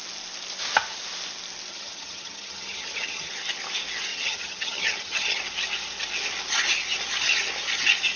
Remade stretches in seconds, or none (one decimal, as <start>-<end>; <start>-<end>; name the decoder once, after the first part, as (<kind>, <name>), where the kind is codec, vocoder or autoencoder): 1.7-3.3 (vocoder, HiFi-GAN); 4.1-5.4